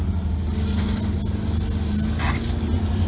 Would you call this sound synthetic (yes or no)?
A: no